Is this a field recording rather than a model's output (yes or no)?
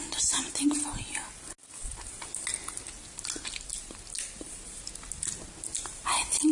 yes